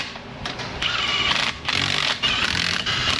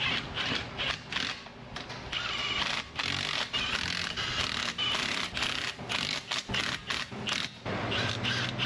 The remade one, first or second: first